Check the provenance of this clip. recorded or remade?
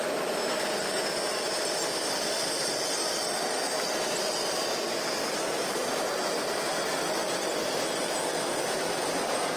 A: recorded